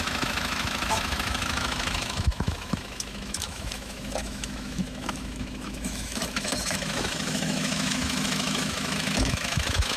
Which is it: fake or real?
fake